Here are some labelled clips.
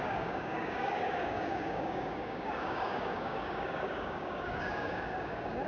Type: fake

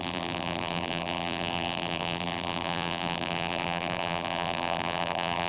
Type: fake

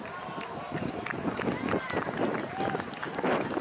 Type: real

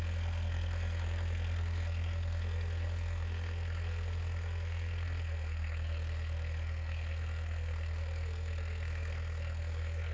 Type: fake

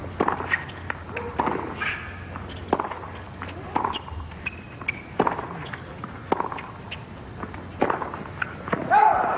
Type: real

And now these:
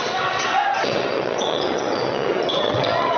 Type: fake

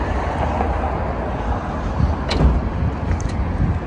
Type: real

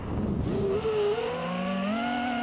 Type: real